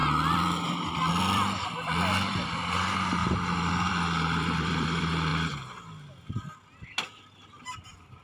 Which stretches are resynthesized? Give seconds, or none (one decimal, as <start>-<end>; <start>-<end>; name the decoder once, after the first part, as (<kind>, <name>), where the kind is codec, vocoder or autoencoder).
0.0-3.2 (vocoder, BigVGAN v2); 3.9-5.3; 7.6-8.2